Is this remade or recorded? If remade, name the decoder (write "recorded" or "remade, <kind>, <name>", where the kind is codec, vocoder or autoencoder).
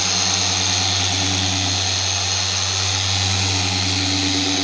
recorded